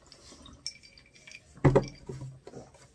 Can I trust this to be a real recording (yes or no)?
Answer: yes